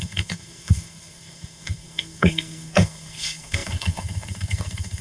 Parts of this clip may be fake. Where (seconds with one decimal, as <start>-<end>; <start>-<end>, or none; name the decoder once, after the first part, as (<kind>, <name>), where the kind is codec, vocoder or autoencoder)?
0.0-5.0 (codec, SNAC)